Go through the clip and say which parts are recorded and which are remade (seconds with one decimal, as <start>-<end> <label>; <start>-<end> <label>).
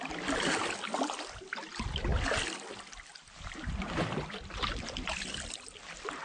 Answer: 0.0-6.2 recorded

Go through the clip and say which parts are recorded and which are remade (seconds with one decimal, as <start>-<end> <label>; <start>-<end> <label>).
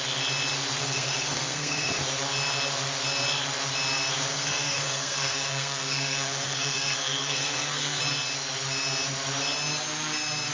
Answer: 0.0-0.8 recorded; 0.8-1.9 remade; 1.9-4.3 recorded; 4.3-8.0 remade; 8.0-10.5 recorded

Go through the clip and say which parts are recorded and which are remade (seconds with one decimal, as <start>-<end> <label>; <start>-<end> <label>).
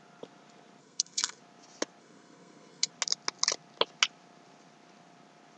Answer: 0.0-0.8 recorded; 0.8-1.4 remade; 1.4-2.0 recorded; 2.0-2.9 remade; 2.9-5.6 recorded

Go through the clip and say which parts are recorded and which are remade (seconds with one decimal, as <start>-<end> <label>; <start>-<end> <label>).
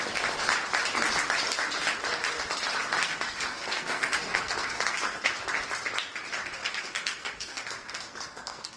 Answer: 0.0-3.0 recorded; 3.0-5.3 remade; 5.3-6.6 recorded; 6.6-8.8 remade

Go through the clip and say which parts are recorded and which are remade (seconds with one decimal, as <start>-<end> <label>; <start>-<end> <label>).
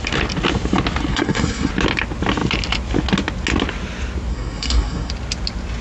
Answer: 0.0-1.1 recorded; 1.1-1.7 remade; 1.7-4.3 recorded; 4.3-5.1 remade; 5.1-5.8 recorded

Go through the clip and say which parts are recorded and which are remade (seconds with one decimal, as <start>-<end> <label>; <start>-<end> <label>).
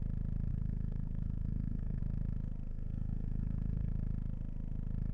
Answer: 0.0-0.5 recorded; 0.5-2.0 remade; 2.0-2.7 recorded; 2.7-3.9 remade; 3.9-5.1 recorded